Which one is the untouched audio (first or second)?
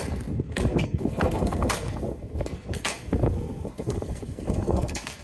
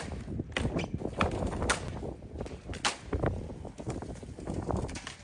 second